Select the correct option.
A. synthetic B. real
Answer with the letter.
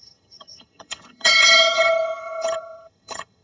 A